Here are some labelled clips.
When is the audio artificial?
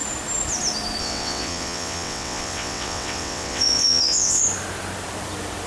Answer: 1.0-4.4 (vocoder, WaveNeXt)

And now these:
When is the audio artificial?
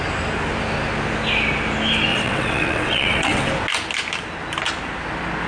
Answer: 2.1-3.5 (vocoder, WaveNeXt)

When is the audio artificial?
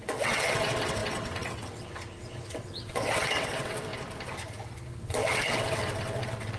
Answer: 0.0-3.9 (vocoder, WaveNeXt); 5.0-6.6